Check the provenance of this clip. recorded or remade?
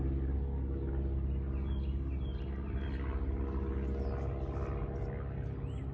recorded